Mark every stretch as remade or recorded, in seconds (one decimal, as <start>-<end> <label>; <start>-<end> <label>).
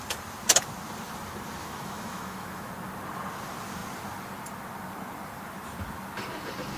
0.0-1.6 recorded; 1.6-2.7 remade; 2.7-6.8 recorded